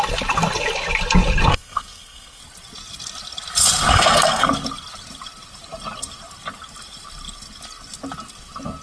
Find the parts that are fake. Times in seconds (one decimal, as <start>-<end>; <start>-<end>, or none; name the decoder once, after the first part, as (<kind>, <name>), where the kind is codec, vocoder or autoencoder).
1.5-2.4 (codec, SNAC); 3.9-4.5